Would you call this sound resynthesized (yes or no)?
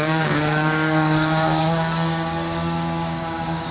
yes